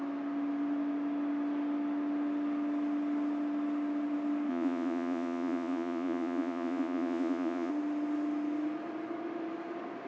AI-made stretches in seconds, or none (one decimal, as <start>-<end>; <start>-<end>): 4.5-7.7